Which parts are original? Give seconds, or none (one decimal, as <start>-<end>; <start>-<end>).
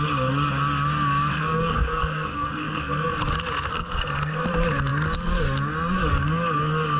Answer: 0.0-1.3; 3.1-3.7; 4.5-7.0